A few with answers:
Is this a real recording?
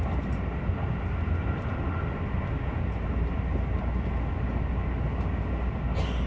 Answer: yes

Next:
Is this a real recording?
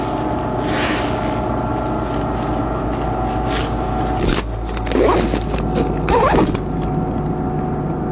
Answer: yes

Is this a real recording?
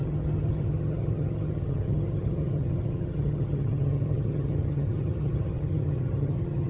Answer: no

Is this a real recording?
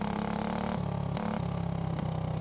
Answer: yes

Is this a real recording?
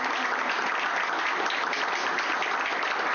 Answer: yes